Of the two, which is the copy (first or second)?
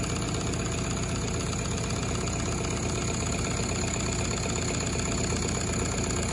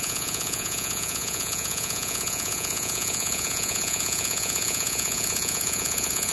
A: second